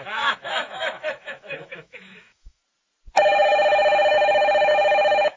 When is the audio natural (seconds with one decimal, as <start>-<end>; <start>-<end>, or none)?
2.6-4.1

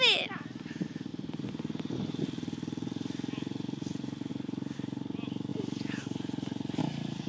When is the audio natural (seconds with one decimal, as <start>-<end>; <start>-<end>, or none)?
0.0-7.3

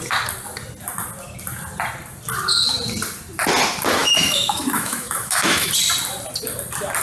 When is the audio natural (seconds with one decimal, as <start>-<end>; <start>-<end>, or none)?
0.0-4.0; 5.7-7.0

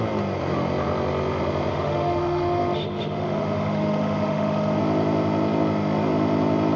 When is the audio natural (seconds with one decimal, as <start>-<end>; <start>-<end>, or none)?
0.0-1.7; 4.8-6.8

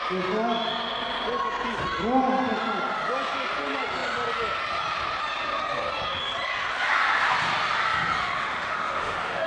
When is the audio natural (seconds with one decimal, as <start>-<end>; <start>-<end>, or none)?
0.0-8.2

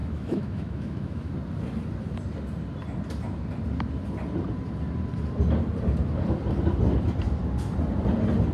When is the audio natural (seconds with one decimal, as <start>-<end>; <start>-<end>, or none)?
1.3-8.5

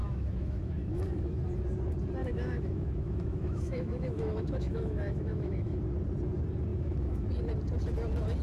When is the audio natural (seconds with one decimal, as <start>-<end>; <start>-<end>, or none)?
1.4-2.2; 5.8-6.7; 7.3-8.4

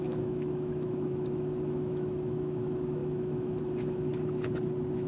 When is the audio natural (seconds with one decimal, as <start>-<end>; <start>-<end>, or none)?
4.1-5.1